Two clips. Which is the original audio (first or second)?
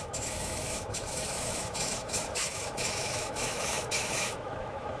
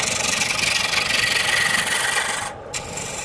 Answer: second